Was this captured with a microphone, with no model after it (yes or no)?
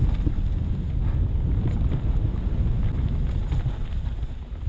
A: yes